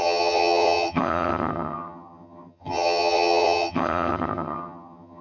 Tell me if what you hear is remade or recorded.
remade